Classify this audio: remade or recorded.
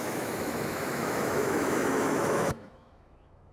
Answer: remade